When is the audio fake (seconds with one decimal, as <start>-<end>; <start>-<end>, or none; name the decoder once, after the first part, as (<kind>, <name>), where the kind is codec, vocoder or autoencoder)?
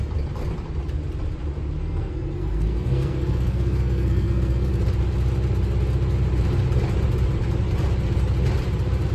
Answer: 1.8-4.7 (codec, SNAC)